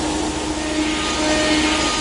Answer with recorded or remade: recorded